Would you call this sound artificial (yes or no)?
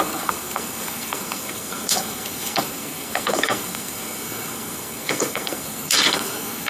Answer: yes